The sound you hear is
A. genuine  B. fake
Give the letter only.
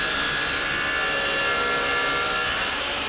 A